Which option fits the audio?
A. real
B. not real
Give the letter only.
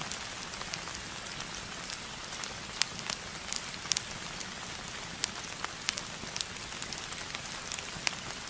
A